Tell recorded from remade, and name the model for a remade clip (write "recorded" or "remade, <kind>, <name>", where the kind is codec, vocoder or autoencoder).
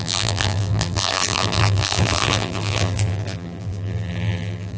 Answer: remade, vocoder, BigVGAN v2